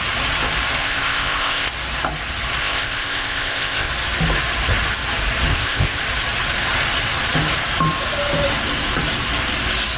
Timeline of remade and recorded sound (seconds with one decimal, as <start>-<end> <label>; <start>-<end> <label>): 0.0-0.8 recorded; 0.8-1.7 remade; 1.7-2.6 recorded; 2.6-3.9 remade; 3.9-5.5 recorded; 5.5-6.0 remade; 6.0-10.0 recorded